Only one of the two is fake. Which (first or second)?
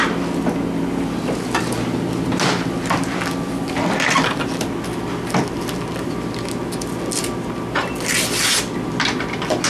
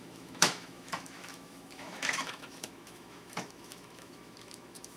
second